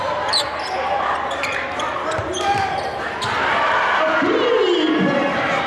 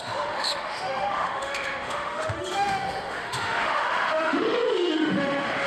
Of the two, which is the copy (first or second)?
second